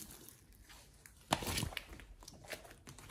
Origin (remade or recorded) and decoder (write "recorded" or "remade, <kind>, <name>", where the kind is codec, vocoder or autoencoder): recorded